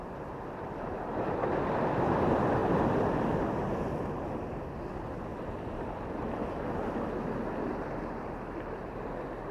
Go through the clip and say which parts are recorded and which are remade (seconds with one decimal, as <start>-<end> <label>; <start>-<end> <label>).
0.0-2.6 recorded; 2.6-3.4 remade; 3.4-5.3 recorded; 5.3-5.8 remade; 5.8-9.5 recorded